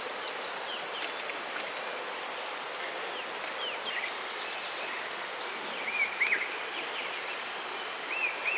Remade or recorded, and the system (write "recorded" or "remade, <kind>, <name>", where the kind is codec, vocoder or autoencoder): recorded